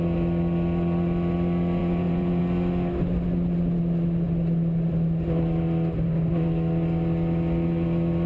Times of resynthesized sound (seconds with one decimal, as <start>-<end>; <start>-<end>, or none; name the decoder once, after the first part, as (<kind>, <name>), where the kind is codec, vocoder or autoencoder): 1.8-2.4 (vocoder, Vocos)